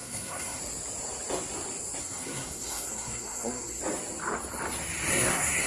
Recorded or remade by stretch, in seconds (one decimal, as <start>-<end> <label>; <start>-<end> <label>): 0.0-0.6 remade; 0.6-2.0 recorded; 2.0-3.8 remade; 3.8-5.1 recorded; 5.1-5.7 remade